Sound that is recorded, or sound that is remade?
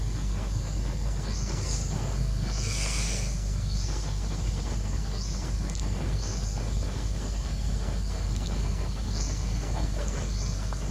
remade